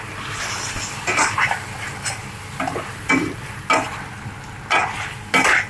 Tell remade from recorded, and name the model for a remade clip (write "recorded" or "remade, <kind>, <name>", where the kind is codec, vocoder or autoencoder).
recorded